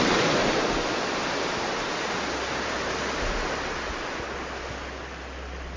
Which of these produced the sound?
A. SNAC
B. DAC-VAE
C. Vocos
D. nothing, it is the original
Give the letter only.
D